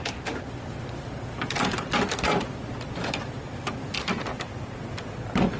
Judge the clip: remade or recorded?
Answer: remade